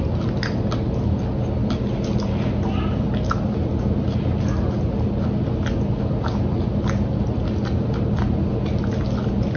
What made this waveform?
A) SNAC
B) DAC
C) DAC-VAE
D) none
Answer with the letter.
D